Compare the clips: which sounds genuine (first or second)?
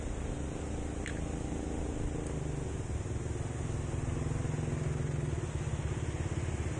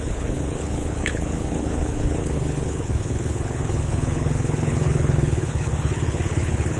first